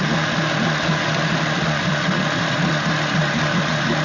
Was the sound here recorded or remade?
recorded